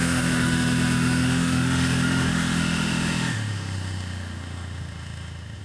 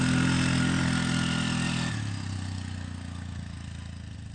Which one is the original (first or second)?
second